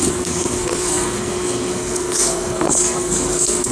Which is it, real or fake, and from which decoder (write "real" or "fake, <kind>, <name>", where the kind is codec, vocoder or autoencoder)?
fake, codec, SNAC